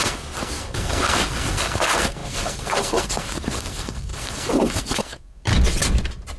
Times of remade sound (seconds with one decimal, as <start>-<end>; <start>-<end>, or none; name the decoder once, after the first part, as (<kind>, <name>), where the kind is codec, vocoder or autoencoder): 0.0-5.5 (codec, SNAC)